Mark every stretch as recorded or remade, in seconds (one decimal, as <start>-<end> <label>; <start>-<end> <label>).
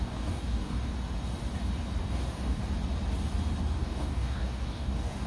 0.0-0.9 remade; 0.9-2.0 recorded; 2.0-2.6 remade; 2.6-3.6 recorded; 3.6-5.3 remade